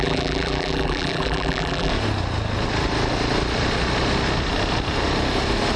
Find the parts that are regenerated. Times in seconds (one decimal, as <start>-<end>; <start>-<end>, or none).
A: 0.0-1.9